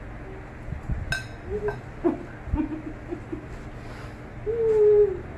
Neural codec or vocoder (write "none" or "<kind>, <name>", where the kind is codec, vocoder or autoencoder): none